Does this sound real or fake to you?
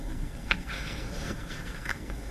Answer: fake